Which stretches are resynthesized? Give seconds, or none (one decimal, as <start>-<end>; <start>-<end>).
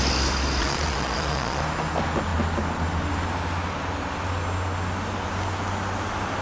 0.6-1.6